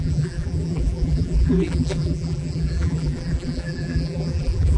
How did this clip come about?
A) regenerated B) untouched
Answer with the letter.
A